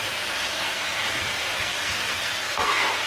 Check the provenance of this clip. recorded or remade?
remade